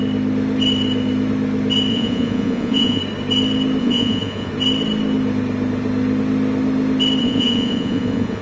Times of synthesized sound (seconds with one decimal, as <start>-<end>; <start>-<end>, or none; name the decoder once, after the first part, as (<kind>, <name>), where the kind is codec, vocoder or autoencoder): 1.9-3.0 (vocoder, Vocos); 3.8-4.5; 7.2-8.4